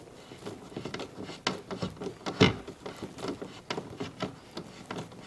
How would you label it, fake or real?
real